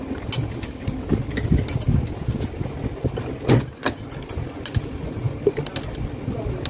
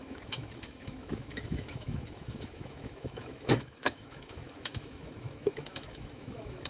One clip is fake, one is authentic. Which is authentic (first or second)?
first